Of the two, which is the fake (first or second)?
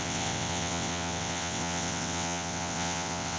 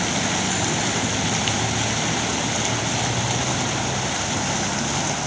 first